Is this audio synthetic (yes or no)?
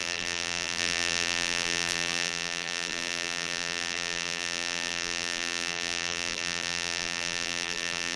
yes